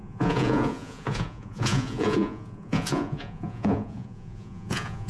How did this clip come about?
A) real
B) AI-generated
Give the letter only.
B